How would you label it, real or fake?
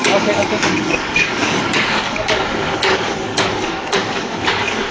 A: fake